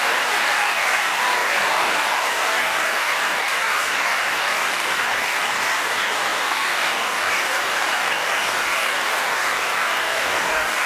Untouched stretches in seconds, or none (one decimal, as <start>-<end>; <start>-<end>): none